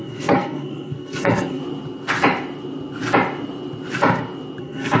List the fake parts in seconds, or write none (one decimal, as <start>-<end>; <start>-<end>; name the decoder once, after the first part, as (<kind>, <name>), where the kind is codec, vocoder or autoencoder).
0.0-1.6 (codec, SNAC); 4.6-5.0